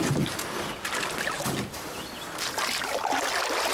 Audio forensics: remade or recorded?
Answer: recorded